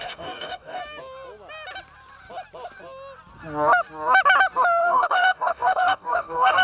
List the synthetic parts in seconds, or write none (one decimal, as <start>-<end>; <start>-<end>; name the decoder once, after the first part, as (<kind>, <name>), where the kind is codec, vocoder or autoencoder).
0.0-0.8 (codec, DAC); 4.8-6.6

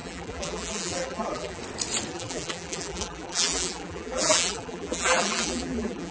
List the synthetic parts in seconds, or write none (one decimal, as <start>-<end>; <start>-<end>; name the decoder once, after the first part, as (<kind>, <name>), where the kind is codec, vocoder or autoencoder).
0.0-1.6 (vocoder, BigVGAN v2); 2.1-6.1

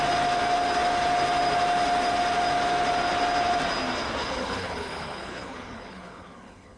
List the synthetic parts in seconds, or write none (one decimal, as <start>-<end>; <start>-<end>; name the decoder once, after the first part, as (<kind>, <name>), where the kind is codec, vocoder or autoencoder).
4.2-6.8 (codec, HILCodec)

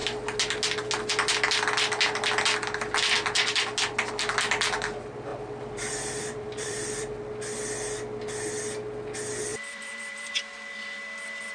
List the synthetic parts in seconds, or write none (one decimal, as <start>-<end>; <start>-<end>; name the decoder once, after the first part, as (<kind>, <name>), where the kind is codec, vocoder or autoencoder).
5.3-7.2 (vocoder, BigVGAN v2); 9.5-10.4

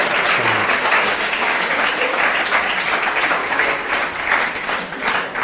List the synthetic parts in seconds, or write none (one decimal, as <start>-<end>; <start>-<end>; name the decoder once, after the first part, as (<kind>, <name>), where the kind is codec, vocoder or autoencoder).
0.6-1.8 (codec, DAC); 3.4-3.9

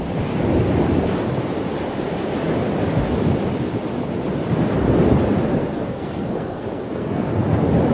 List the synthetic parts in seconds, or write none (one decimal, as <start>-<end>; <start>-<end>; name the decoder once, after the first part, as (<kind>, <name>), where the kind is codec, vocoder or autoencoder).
5.5-7.3 (codec, SNAC)

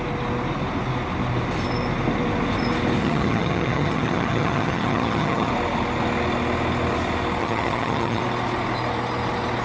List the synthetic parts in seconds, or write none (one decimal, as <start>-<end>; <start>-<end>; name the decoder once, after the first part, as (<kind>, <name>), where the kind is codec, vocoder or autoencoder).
3.0-5.5 (vocoder, HiFi-GAN); 7.4-8.2

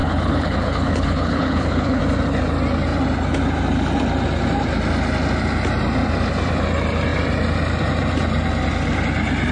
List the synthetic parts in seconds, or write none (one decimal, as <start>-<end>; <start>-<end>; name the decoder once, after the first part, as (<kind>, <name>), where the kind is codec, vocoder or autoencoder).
0.0-2.0 (codec, HILCodec)